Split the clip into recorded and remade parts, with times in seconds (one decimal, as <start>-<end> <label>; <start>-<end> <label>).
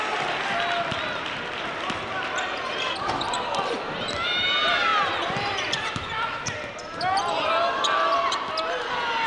0.0-9.3 recorded